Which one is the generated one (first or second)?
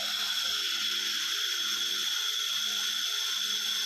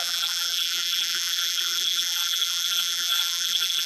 second